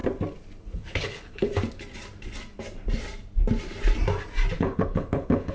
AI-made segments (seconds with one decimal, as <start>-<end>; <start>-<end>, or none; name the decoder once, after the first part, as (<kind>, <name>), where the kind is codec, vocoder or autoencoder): 0.6-1.5 (codec, HILCodec); 4.6-5.5